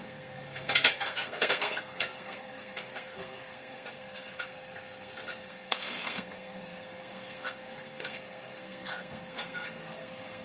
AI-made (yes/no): yes